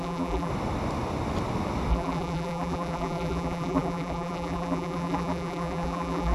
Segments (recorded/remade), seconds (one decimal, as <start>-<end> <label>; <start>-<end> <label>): 0.0-0.5 remade; 0.5-1.9 recorded; 1.9-6.3 remade